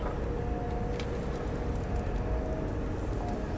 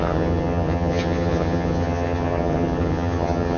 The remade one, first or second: second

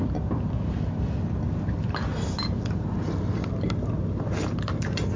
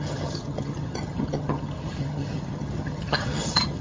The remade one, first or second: second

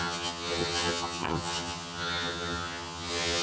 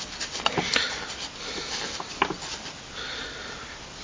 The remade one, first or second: first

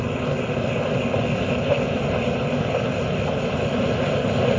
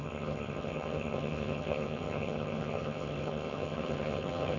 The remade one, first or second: second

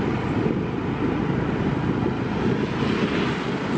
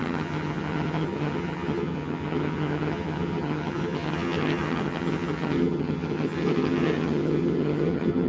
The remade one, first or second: second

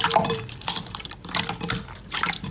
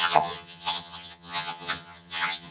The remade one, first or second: second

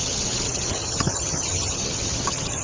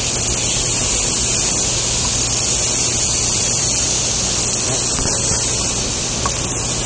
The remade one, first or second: first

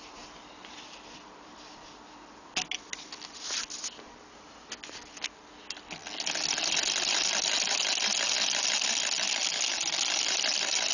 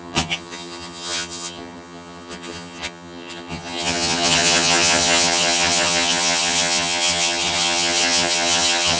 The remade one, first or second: second